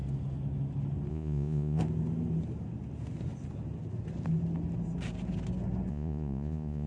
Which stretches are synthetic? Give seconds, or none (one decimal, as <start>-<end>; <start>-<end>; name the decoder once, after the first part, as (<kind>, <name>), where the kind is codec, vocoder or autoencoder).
1.1-1.8 (vocoder, Vocos); 5.9-6.9